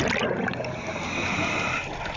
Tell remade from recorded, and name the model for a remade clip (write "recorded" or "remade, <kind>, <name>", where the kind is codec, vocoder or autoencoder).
recorded